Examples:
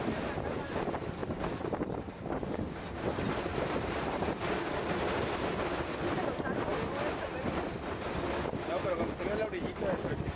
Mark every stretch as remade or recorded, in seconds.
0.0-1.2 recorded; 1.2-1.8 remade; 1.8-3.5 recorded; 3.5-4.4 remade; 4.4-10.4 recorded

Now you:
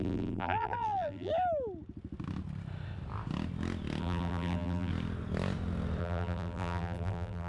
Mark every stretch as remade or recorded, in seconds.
0.0-1.3 remade; 1.3-4.0 recorded; 4.0-4.9 remade; 4.9-6.0 recorded; 6.0-7.5 remade

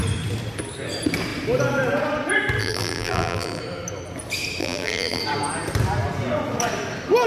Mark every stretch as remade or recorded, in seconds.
0.0-2.6 recorded; 2.6-3.6 remade; 3.6-4.6 recorded; 4.6-5.2 remade; 5.2-7.3 recorded

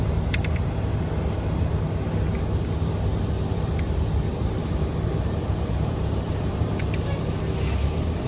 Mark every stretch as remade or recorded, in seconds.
0.0-4.3 recorded; 4.3-6.8 remade; 6.8-8.3 recorded

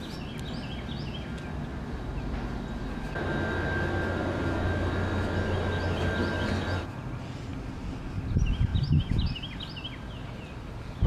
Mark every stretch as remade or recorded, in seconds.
0.0-8.7 recorded; 8.7-9.6 remade; 9.6-11.1 recorded